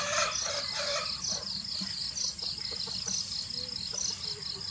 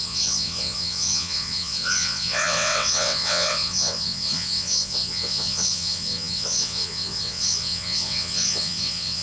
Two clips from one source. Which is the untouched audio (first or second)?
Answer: first